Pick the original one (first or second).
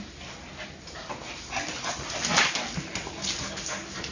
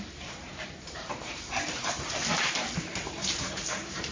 first